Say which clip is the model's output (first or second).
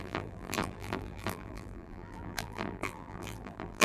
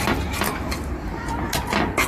first